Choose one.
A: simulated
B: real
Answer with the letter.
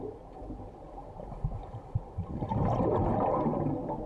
B